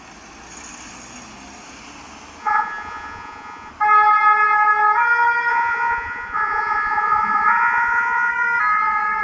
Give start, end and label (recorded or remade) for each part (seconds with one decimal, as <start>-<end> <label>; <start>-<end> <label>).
0.0-2.4 recorded; 2.4-3.7 remade; 3.7-5.5 recorded; 5.5-8.3 remade; 8.3-9.2 recorded